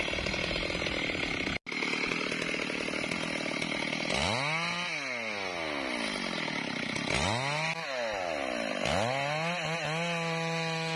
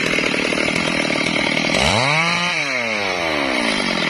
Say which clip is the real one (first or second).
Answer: first